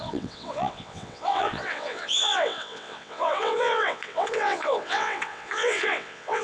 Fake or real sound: fake